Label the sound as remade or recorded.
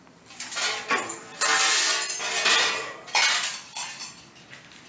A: recorded